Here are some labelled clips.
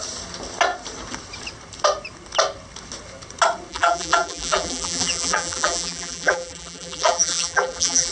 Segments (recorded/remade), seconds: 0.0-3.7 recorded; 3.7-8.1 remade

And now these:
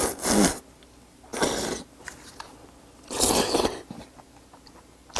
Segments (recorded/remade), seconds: 0.0-5.2 recorded

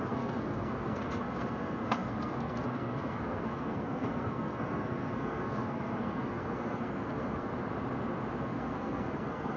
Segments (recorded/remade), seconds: 0.0-7.5 remade; 7.5-8.4 recorded; 8.4-9.6 remade

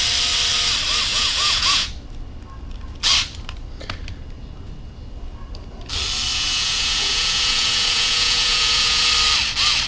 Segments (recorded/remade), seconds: 0.0-1.1 recorded; 1.1-1.9 remade; 1.9-6.3 recorded; 6.3-9.1 remade; 9.1-9.9 recorded

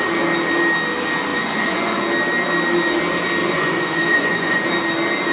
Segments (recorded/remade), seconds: 0.0-1.3 recorded; 1.3-2.0 remade; 2.0-3.4 recorded; 3.4-4.6 remade; 4.6-5.3 recorded

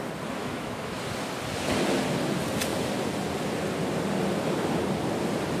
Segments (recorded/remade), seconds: 0.0-0.4 recorded; 0.4-1.0 remade; 1.0-5.6 recorded